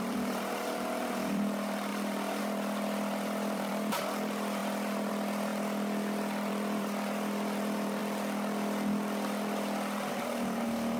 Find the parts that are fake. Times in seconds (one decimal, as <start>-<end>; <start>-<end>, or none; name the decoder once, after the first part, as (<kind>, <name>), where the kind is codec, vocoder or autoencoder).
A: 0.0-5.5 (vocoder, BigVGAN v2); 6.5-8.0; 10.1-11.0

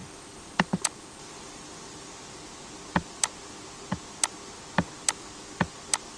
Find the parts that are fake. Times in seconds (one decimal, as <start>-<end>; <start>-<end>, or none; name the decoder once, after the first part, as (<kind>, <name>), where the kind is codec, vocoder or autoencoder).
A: 0.0-2.1 (vocoder, BigVGAN v2)

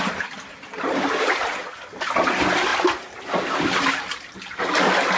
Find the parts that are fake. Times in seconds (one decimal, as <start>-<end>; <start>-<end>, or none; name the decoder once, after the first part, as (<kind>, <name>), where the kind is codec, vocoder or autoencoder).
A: none

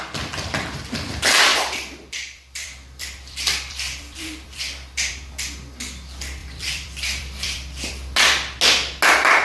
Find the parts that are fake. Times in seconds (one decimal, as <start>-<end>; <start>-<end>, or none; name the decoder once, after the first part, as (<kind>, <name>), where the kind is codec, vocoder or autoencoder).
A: 1.5-5.1 (vocoder, BigVGAN v2); 6.4-7.9

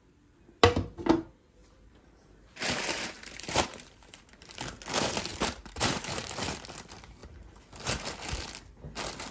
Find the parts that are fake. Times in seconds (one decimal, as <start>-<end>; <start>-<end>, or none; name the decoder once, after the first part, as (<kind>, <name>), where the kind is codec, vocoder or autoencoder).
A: 1.6-4.6 (vocoder, BigVGAN v2); 5.3-6.3; 7.2-8.3

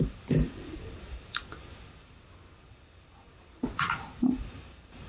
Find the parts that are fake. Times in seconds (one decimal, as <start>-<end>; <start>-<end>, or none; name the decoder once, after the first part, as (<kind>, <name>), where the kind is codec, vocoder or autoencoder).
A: 0.0-1.4 (vocoder, BigVGAN v2); 4.5-5.1

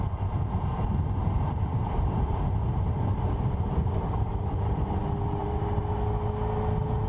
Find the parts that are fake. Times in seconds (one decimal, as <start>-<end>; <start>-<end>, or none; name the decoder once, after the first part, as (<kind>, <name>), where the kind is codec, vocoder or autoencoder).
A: 0.7-5.0 (vocoder, BigVGAN v2); 5.4-5.9

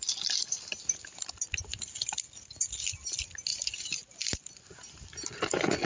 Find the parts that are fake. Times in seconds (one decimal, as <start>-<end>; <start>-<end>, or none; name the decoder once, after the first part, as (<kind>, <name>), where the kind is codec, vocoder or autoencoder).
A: 3.5-4.3 (vocoder, BigVGAN v2)